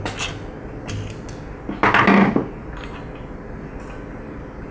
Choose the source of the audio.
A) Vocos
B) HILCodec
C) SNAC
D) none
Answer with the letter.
D